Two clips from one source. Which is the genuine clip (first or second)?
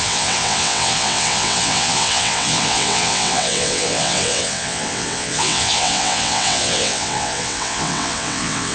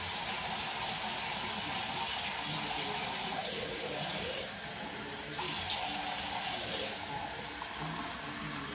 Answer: second